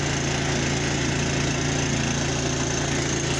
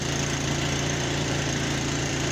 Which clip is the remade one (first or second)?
second